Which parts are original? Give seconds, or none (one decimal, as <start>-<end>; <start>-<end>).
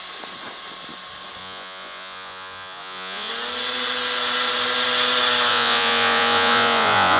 0.0-1.4; 3.3-5.5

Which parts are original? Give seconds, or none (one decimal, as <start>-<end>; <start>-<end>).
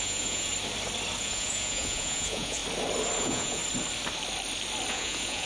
0.5-1.2; 2.6-3.2; 3.6-4.9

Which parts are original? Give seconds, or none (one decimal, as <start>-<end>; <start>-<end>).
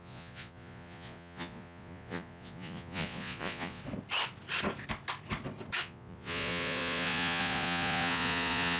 3.8-5.8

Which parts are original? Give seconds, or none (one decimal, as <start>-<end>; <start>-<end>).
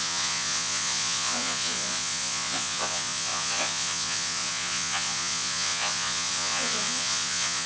none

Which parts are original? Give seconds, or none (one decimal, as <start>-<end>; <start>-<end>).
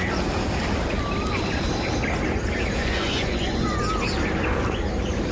0.0-2.8; 3.8-5.3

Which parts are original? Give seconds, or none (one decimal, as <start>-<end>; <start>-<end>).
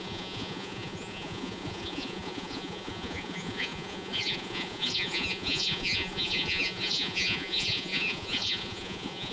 none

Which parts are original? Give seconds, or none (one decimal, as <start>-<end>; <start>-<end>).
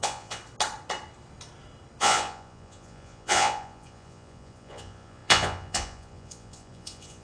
0.4-2.0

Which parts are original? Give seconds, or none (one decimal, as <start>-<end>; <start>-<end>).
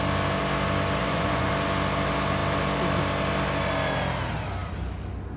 0.0-1.0; 1.5-5.4